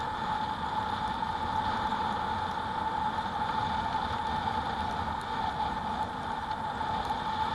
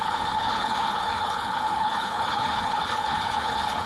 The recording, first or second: first